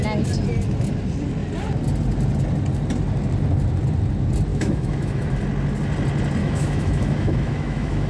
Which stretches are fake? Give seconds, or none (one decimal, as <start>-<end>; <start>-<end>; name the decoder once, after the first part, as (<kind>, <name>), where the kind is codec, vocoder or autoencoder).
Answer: 4.5-5.4 (autoencoder, DAC-VAE); 6.4-8.1